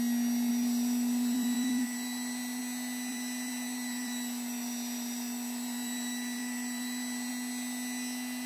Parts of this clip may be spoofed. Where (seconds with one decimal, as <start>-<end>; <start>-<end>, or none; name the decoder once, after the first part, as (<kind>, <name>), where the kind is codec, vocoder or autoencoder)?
0.5-2.6 (vocoder, BigVGAN v2); 3.1-7.3